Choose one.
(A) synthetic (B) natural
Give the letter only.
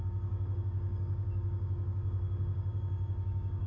A